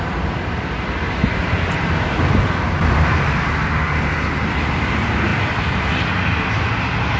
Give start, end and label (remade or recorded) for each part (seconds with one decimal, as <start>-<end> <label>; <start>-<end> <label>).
0.0-7.2 recorded